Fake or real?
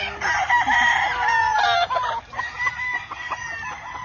real